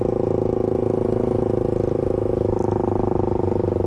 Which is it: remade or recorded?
recorded